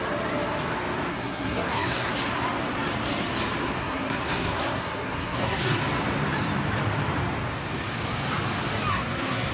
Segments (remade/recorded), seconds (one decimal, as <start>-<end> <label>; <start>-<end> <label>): 0.0-1.1 recorded; 1.1-2.1 remade; 2.1-3.8 recorded; 3.8-5.8 remade; 5.8-8.9 recorded; 8.9-9.5 remade